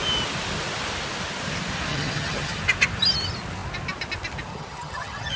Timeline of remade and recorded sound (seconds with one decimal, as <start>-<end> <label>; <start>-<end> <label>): 0.0-1.9 recorded; 1.9-2.6 remade; 2.6-4.5 recorded; 4.5-5.4 remade